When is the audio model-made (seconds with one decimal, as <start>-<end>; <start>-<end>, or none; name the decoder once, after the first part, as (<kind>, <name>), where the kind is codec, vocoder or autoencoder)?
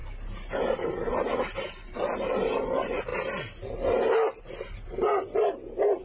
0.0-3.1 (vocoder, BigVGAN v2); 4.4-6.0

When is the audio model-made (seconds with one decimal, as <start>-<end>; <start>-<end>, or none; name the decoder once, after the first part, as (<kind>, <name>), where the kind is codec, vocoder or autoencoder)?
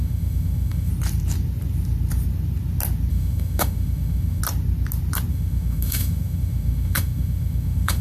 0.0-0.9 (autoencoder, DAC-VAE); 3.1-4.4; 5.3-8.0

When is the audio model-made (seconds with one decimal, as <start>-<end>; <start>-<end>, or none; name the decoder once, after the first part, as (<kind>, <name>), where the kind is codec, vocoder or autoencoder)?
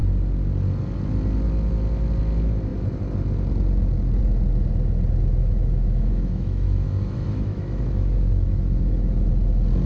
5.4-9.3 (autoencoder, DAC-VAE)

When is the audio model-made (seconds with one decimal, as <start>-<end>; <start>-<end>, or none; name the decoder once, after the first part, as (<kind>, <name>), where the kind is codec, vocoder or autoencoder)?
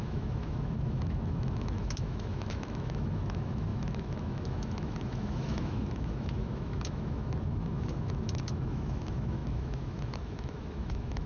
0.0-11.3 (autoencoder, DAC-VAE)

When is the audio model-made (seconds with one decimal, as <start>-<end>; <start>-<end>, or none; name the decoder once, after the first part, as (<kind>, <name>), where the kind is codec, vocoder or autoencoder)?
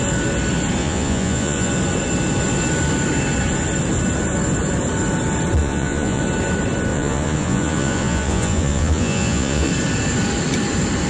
0.8-1.7 (vocoder, Vocos); 5.6-6.2; 6.9-9.7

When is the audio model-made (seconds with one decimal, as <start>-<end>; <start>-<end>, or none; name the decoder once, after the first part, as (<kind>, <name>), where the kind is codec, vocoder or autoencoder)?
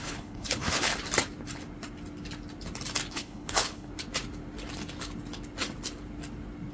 0.0-0.9 (codec, HILCodec); 3.1-3.9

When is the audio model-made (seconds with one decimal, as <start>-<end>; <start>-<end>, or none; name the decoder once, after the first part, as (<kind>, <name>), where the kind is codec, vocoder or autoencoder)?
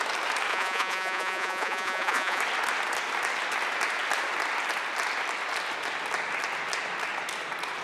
0.5-2.4 (vocoder, Vocos)